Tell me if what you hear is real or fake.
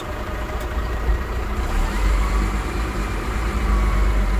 fake